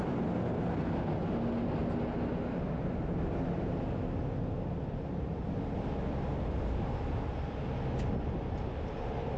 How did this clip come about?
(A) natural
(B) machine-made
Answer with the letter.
A